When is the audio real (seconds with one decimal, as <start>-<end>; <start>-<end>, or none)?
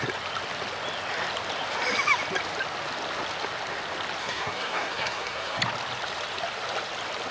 0.0-4.2; 5.6-7.3